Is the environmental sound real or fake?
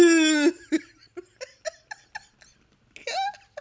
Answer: real